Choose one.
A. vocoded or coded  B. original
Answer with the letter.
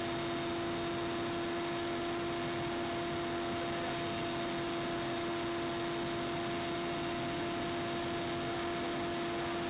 B